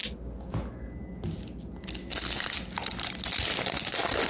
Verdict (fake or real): real